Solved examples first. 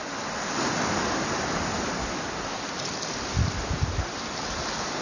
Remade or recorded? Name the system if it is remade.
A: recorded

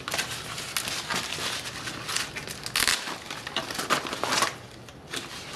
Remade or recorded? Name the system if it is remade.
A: recorded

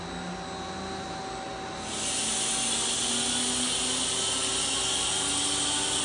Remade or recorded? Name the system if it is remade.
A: recorded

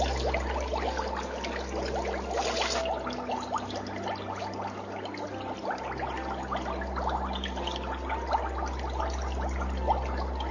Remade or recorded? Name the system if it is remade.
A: recorded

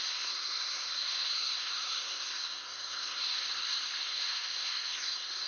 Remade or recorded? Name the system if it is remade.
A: remade, codec, SNAC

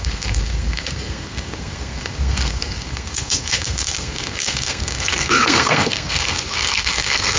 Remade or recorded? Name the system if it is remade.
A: remade, codec, SNAC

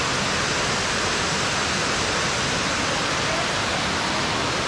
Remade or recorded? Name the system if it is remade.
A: recorded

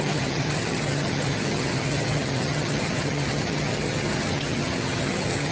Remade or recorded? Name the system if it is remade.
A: remade, vocoder, HiFi-GAN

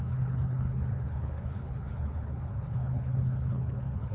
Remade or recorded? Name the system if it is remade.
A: remade, codec, HILCodec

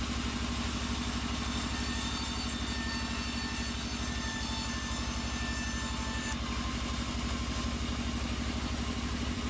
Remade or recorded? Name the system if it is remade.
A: recorded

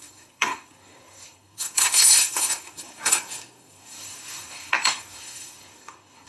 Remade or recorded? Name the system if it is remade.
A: remade, codec, SNAC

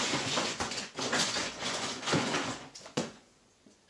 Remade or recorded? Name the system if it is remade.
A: remade, vocoder, Vocos